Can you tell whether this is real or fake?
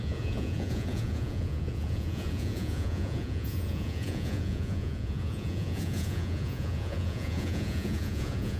fake